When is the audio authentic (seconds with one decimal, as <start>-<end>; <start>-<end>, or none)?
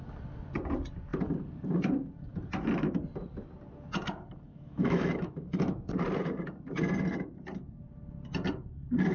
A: 0.0-4.5; 5.9-9.1